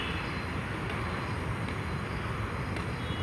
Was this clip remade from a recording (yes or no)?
no